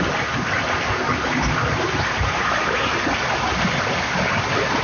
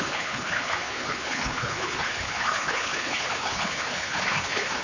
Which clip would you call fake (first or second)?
second